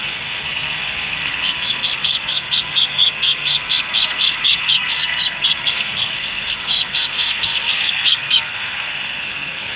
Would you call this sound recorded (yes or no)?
no